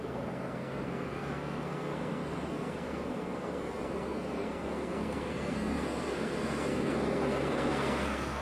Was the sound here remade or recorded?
remade